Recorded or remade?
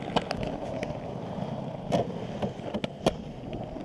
recorded